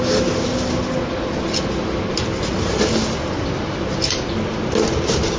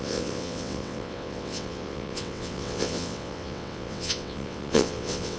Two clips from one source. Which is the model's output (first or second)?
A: second